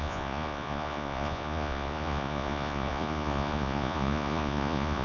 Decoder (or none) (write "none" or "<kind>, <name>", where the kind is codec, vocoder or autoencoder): vocoder, Vocos